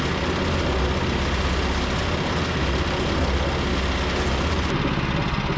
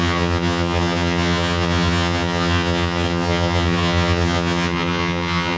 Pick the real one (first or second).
first